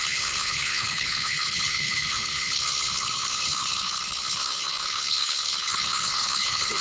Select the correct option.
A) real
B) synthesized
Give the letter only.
B